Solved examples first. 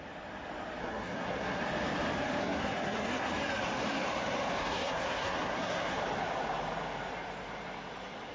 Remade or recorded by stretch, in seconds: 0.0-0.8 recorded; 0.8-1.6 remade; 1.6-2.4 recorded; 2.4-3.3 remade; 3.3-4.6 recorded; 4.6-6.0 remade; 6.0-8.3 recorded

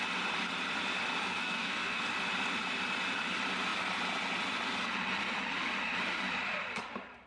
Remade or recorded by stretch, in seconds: 0.0-1.2 recorded; 1.2-2.0 remade; 2.0-7.3 recorded

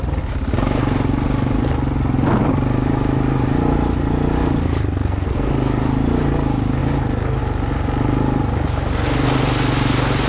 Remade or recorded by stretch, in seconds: 0.0-5.0 recorded; 5.0-5.5 remade; 5.5-10.3 recorded

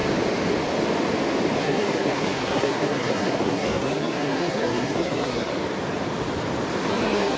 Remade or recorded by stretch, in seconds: 0.0-1.6 recorded; 1.6-5.5 remade; 5.5-6.9 recorded; 6.9-7.4 remade

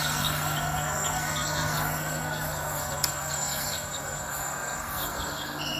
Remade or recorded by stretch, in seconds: 0.0-5.8 remade